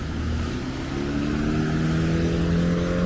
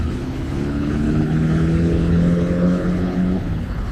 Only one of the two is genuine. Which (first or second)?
first